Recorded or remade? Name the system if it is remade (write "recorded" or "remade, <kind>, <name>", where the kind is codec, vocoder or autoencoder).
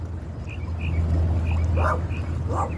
recorded